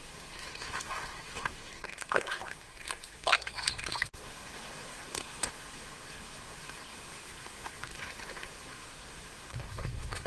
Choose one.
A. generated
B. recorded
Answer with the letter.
A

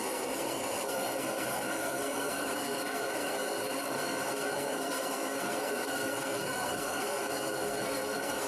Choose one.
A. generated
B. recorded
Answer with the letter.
A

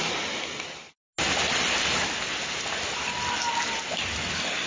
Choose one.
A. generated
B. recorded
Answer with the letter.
B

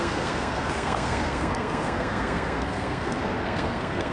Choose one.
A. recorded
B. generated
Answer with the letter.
B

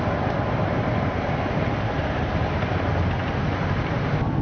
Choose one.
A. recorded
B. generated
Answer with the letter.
A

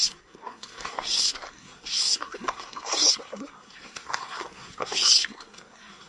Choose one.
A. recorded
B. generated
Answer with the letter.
B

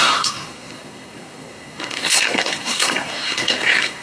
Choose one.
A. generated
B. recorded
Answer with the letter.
A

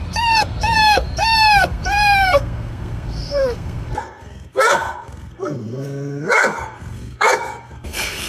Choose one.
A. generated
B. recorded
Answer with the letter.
A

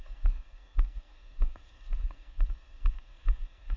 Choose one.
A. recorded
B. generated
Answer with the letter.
B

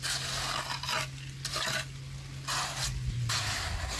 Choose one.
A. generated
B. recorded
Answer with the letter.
B